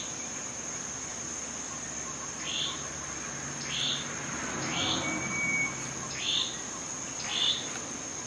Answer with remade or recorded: recorded